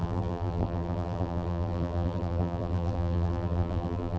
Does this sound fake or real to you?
fake